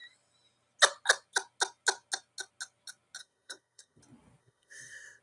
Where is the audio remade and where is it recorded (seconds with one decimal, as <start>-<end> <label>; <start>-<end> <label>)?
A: 0.0-3.2 recorded; 3.2-4.0 remade; 4.0-4.4 recorded; 4.4-5.2 remade